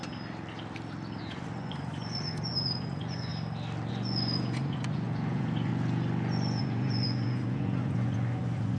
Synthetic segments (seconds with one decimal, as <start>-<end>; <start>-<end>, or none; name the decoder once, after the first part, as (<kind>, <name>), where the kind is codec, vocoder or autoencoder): 1.2-3.3 (vocoder, Vocos); 3.9-5.7; 6.6-8.8